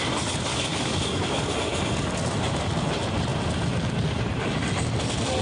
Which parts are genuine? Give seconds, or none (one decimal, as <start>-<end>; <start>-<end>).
0.0-0.5; 1.4-5.4